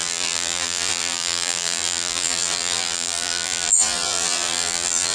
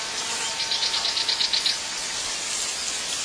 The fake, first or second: first